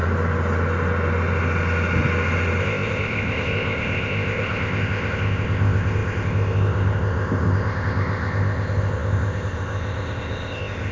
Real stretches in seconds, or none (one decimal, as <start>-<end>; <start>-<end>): 0.0-2.6